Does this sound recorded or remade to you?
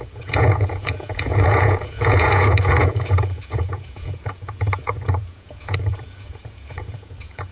remade